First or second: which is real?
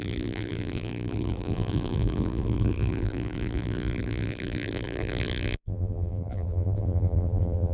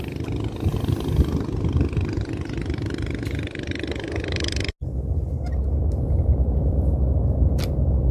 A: second